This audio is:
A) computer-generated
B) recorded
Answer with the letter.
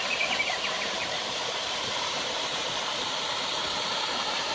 A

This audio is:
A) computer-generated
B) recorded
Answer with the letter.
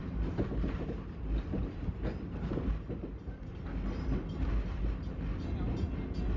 B